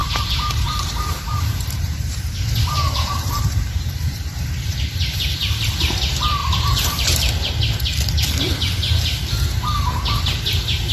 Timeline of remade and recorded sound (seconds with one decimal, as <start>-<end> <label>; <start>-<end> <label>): 0.0-5.2 remade; 5.2-6.4 recorded; 6.4-7.5 remade; 7.5-10.9 recorded